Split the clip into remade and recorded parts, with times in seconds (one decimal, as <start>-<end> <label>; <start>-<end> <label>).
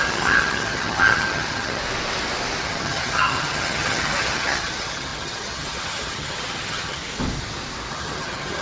0.0-1.8 remade; 1.8-2.6 recorded; 2.6-7.0 remade; 7.0-7.9 recorded; 7.9-8.6 remade